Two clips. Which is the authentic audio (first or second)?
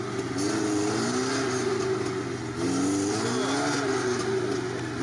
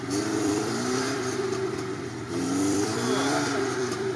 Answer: first